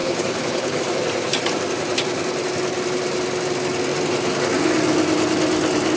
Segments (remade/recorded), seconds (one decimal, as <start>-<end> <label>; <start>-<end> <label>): 0.0-0.8 remade; 0.8-6.0 recorded